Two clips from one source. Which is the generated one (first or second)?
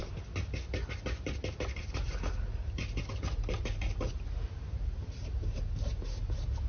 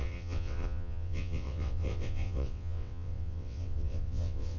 second